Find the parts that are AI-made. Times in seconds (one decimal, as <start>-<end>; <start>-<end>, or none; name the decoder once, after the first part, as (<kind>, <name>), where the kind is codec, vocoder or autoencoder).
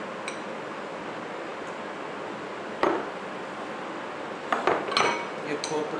none